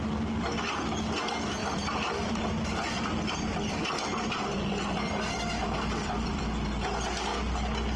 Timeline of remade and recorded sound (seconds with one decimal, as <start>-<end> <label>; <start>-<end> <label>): 0.0-1.6 recorded; 1.6-6.4 remade; 6.4-8.0 recorded